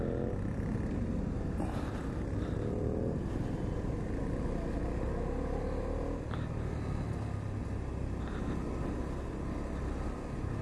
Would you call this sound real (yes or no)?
yes